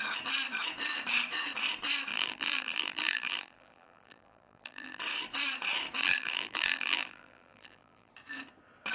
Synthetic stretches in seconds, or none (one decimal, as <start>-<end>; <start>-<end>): 2.1-5.0; 6.0-8.1